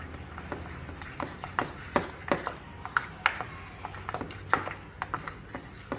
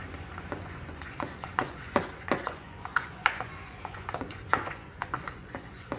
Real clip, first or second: first